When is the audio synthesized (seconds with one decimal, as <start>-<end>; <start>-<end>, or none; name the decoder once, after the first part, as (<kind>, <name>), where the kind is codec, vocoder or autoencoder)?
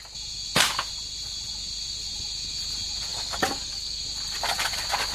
3.1-4.0 (codec, DAC)